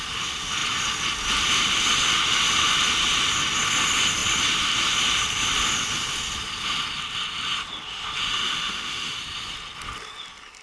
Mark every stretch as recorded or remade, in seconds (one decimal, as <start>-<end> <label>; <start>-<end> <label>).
0.0-8.3 recorded; 8.3-9.2 remade; 9.2-10.6 recorded